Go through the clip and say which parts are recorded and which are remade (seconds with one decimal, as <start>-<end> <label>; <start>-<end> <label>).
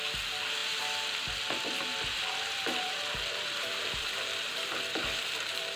0.0-1.9 recorded; 1.9-5.8 remade